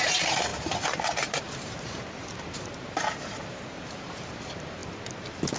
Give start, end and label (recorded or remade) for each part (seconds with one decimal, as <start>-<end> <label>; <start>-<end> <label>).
0.0-4.8 remade; 4.8-5.6 recorded